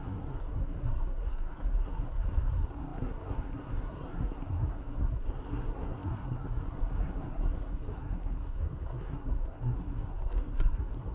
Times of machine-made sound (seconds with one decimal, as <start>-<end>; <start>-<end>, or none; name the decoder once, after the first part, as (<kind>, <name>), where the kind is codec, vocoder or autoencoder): 0.0-11.1 (codec, SNAC)

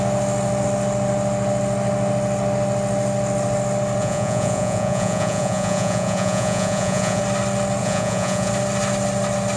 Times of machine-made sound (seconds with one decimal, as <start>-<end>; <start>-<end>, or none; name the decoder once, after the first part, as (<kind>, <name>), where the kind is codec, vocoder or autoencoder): 4.0-7.2 (vocoder, Vocos); 7.8-8.5

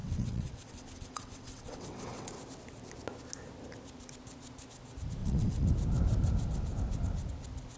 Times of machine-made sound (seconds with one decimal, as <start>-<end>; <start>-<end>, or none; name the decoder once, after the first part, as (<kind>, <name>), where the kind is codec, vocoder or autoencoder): 0.0-2.3 (vocoder, WaveNeXt); 5.2-5.7

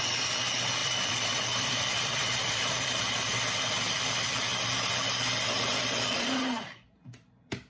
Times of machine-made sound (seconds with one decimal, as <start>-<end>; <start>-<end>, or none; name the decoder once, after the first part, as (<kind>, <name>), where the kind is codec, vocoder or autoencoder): 0.8-4.3 (vocoder, BigVGAN v2)

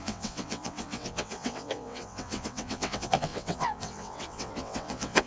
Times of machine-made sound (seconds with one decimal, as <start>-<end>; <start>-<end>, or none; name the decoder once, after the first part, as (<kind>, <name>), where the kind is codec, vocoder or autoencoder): 0.0-5.3 (vocoder, WaveNeXt)

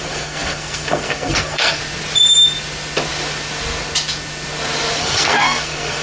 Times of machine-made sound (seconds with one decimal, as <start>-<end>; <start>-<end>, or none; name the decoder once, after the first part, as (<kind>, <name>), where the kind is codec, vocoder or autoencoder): 0.0-1.8 (codec, SNAC); 5.0-6.0